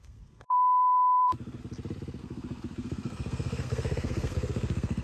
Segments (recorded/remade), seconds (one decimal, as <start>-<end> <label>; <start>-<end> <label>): 0.0-1.6 remade; 1.6-2.2 recorded; 2.2-5.0 remade